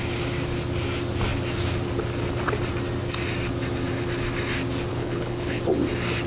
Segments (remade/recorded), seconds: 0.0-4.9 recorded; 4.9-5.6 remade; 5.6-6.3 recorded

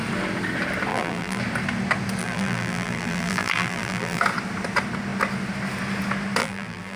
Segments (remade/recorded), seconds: 0.0-0.9 recorded; 0.9-1.4 remade; 1.4-2.2 recorded; 2.2-4.2 remade; 4.2-6.4 recorded; 6.4-7.0 remade

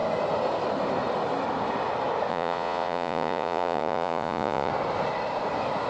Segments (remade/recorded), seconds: 0.0-2.3 recorded; 2.3-4.7 remade; 4.7-5.9 recorded

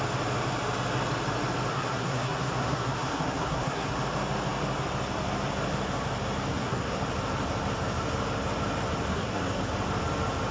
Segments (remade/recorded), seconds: 0.0-1.7 recorded; 1.7-4.0 remade; 4.0-6.5 recorded; 6.5-7.0 remade; 7.0-9.1 recorded; 9.1-9.6 remade; 9.6-10.5 recorded

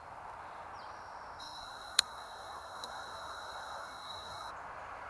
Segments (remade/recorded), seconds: 0.0-1.4 recorded; 1.4-4.5 remade; 4.5-5.1 recorded